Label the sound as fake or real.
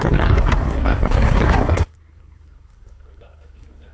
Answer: fake